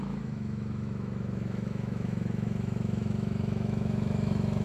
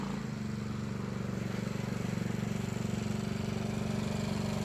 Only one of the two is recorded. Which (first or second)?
second